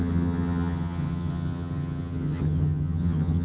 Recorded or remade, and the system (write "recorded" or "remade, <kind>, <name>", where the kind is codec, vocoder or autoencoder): remade, vocoder, HiFi-GAN